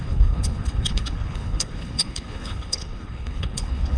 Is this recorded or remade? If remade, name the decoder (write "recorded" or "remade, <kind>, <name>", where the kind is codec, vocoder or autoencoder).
remade, codec, HILCodec